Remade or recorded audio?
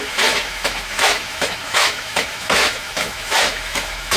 remade